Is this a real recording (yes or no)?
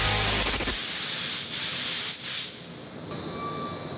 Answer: yes